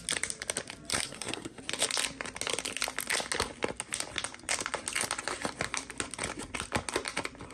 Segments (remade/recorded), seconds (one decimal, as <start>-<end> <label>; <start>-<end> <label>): 0.0-0.9 recorded; 0.9-1.6 remade; 1.6-7.5 recorded